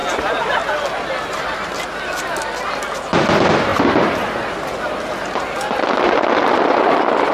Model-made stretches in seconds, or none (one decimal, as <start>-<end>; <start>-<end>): none